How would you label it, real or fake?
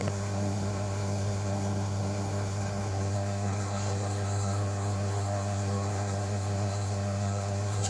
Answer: fake